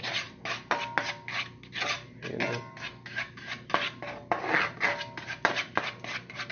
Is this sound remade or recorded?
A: recorded